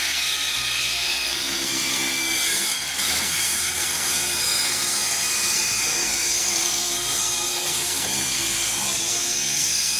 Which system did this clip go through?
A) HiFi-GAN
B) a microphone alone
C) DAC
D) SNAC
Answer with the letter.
D